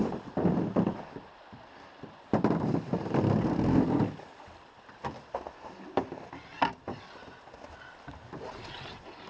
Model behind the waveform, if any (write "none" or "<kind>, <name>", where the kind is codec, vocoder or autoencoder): none